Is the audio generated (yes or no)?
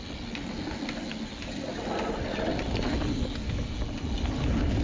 no